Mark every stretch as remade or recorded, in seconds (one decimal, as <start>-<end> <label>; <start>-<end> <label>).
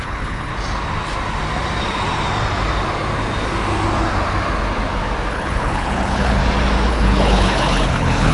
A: 0.0-0.5 remade; 0.5-5.3 recorded; 5.3-6.4 remade; 6.4-6.9 recorded; 6.9-8.3 remade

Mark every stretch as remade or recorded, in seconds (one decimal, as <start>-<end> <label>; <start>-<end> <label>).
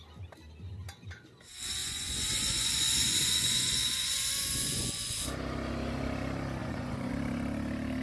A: 0.0-1.8 recorded; 1.8-5.2 remade; 5.2-6.6 recorded; 6.6-7.1 remade; 7.1-8.0 recorded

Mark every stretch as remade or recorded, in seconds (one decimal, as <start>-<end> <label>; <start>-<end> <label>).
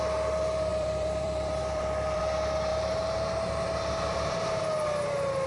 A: 0.0-0.7 recorded; 0.7-2.2 remade; 2.2-5.5 recorded